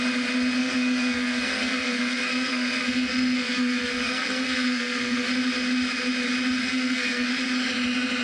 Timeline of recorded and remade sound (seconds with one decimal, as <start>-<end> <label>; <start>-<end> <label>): 0.0-0.6 recorded; 0.6-5.3 remade; 5.3-6.6 recorded; 6.6-7.3 remade; 7.3-8.2 recorded